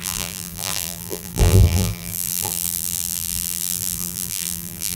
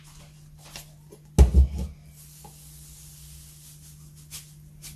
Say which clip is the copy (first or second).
first